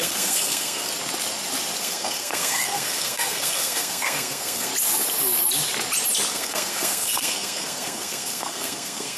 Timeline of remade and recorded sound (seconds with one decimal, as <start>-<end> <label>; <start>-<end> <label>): 0.0-0.9 remade; 0.9-1.8 recorded; 1.8-4.7 remade; 4.7-6.3 recorded; 6.3-9.2 remade